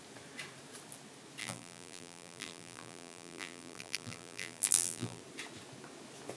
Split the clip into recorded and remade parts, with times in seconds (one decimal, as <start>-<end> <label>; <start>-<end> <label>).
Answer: 0.0-1.4 recorded; 1.4-5.2 remade; 5.2-6.4 recorded